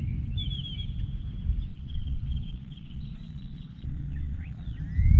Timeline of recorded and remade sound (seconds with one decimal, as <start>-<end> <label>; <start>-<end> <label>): 0.0-1.7 recorded; 1.7-4.8 remade; 4.8-5.2 recorded